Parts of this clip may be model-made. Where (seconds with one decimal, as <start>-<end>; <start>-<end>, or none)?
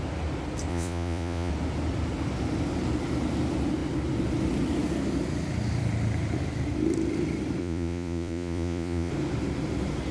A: 0.7-1.5; 7.6-9.1